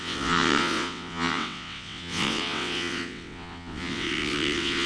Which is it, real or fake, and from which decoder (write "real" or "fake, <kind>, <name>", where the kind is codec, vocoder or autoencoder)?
fake, vocoder, WaveNeXt